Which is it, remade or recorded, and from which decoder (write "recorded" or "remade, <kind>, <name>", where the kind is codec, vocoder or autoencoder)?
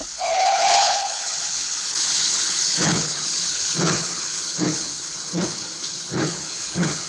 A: remade, codec, HILCodec